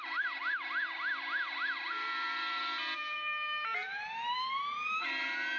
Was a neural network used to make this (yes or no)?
yes